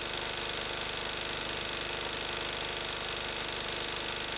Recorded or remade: recorded